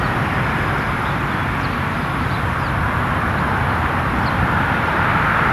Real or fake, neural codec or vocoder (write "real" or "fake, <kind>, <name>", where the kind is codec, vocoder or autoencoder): real